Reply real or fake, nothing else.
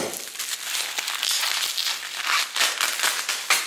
real